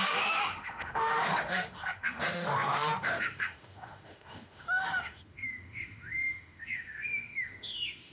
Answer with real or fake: fake